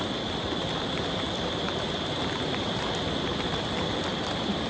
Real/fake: real